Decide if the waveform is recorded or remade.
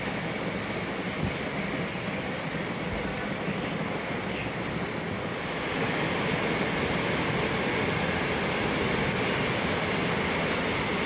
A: recorded